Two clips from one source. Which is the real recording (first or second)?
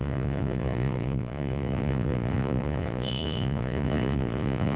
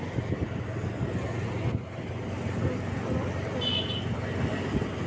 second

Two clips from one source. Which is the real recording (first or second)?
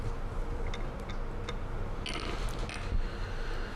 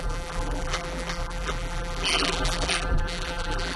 first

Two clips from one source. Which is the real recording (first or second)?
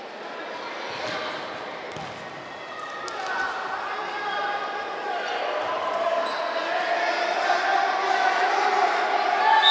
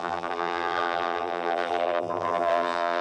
first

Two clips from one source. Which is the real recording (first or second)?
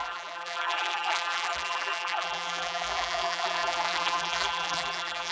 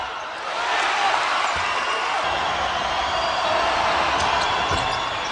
second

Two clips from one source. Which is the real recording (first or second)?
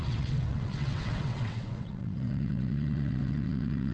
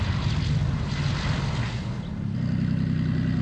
second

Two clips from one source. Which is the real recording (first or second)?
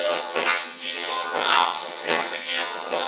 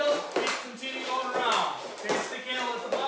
second